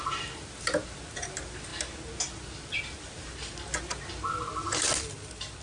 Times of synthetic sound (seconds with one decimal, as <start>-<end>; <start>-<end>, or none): none